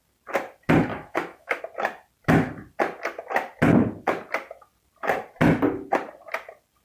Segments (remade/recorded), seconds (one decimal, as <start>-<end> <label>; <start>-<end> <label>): 0.0-0.9 recorded; 0.9-1.6 remade; 1.6-6.8 recorded